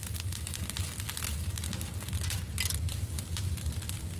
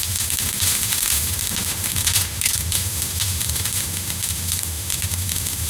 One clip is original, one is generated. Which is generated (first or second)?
second